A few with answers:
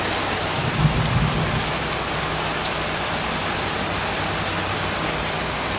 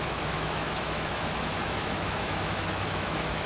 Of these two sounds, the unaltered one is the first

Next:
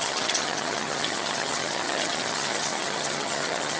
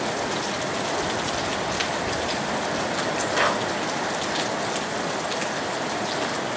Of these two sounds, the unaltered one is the second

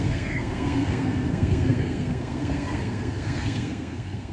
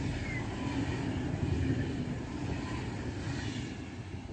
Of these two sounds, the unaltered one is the second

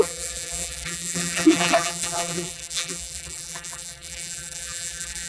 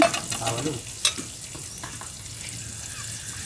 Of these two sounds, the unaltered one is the second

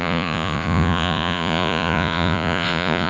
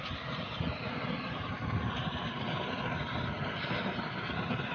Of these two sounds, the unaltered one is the second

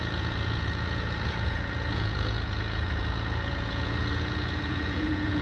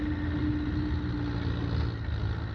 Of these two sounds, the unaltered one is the second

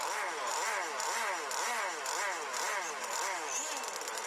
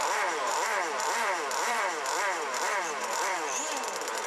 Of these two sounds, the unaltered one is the first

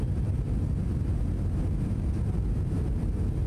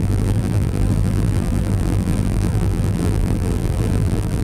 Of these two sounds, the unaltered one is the first